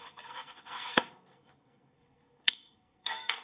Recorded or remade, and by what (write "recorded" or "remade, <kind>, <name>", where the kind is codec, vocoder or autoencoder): remade, codec, SNAC